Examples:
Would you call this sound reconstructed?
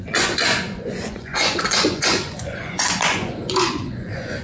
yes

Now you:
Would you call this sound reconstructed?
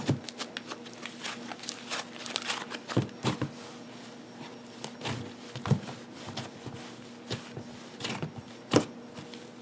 no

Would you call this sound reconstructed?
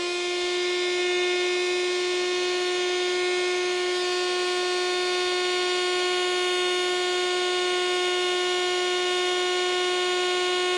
no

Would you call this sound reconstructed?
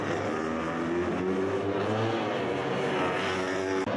no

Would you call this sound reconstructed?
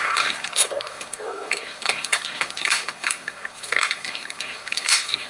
yes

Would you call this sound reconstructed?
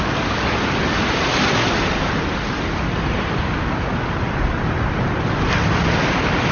no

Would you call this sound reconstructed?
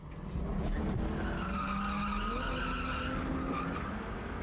no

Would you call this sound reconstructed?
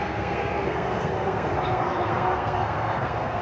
yes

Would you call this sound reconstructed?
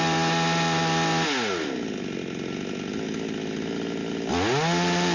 no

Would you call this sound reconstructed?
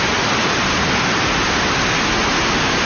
no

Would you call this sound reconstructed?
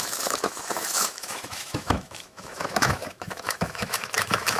yes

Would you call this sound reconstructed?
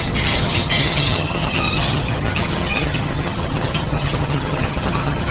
yes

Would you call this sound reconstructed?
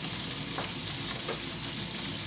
no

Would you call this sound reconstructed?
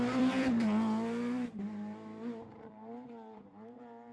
yes